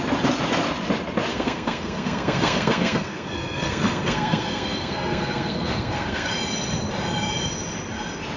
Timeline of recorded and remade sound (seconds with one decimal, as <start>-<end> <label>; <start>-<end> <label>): 0.0-1.3 recorded; 1.3-6.3 remade; 6.3-8.4 recorded